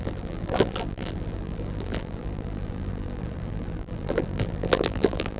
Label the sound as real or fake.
fake